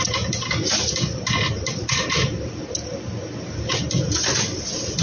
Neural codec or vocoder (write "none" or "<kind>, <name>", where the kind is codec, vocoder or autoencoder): none